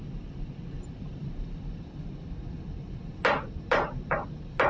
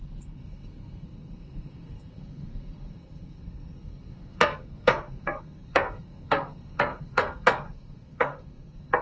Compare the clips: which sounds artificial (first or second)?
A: second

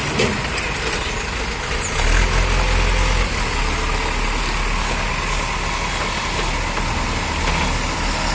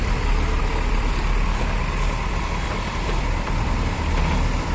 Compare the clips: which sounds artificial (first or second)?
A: second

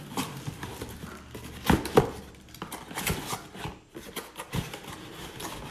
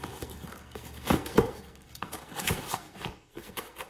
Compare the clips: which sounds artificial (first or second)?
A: second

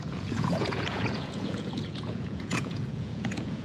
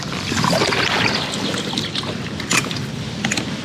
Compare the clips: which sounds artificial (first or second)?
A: first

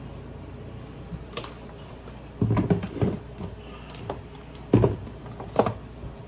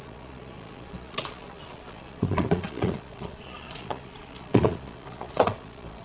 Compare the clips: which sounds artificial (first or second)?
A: second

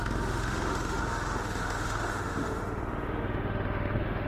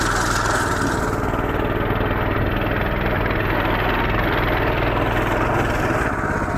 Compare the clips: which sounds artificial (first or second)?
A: first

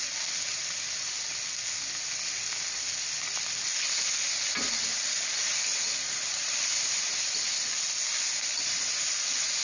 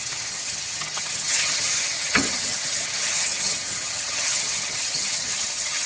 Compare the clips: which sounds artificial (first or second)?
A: second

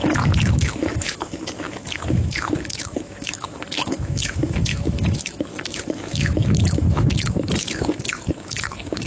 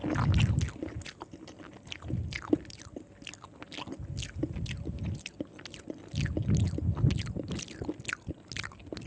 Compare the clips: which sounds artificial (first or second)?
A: first